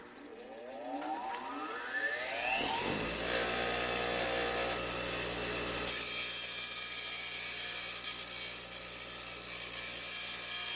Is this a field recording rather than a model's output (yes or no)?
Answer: yes